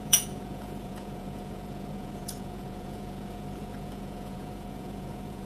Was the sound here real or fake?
fake